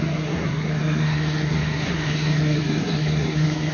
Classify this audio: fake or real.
fake